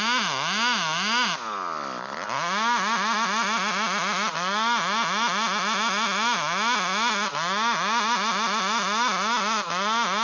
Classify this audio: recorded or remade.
recorded